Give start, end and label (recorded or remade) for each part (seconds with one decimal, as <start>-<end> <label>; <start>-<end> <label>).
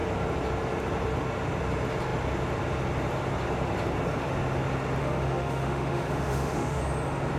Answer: 0.0-5.0 recorded; 5.0-6.8 remade; 6.8-7.4 recorded